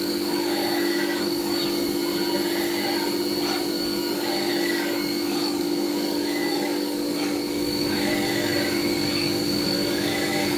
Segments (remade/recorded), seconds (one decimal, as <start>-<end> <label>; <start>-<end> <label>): 0.0-2.0 remade; 2.0-3.7 recorded; 3.7-10.6 remade